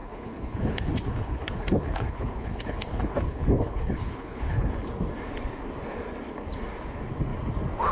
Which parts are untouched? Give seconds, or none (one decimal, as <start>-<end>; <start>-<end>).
4.7-7.9